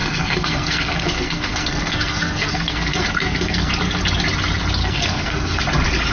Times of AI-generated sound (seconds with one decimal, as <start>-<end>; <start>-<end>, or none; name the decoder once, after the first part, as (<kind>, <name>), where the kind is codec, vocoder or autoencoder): 0.0-3.7 (codec, SNAC); 4.8-5.6